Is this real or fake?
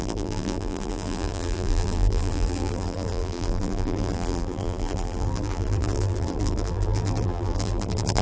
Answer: fake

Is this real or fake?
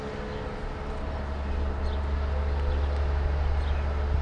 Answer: real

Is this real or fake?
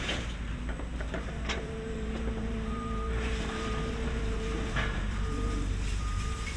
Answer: fake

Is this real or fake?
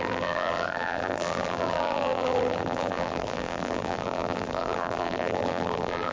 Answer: fake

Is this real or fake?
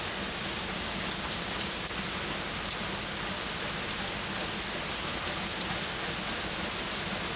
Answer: real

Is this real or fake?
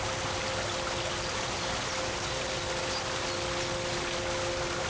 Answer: real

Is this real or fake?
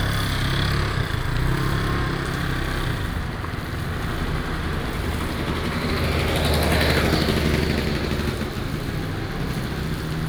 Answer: real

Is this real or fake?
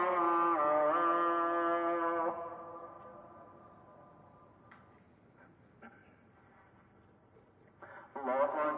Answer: real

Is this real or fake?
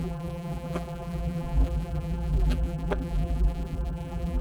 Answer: fake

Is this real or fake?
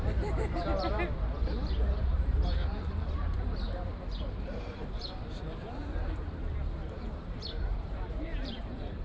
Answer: fake